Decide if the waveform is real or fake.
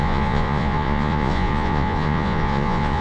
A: fake